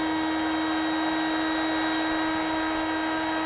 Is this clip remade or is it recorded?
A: recorded